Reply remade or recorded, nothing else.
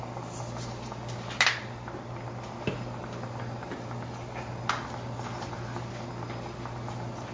recorded